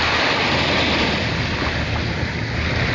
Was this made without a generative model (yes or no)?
yes